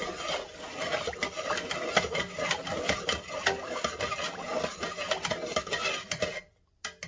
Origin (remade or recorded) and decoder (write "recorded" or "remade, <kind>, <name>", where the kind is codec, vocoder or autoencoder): recorded